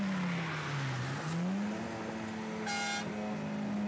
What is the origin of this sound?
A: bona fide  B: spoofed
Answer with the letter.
A